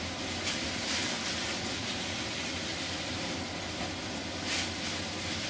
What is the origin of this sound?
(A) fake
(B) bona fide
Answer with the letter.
B